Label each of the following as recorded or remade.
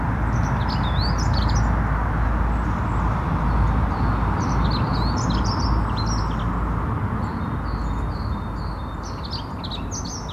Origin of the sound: recorded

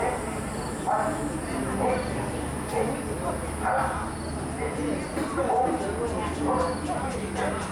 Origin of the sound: recorded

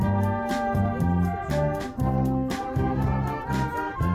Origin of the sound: recorded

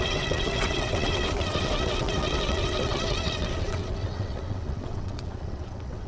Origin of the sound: remade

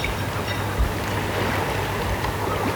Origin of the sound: recorded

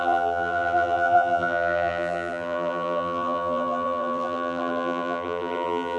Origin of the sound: remade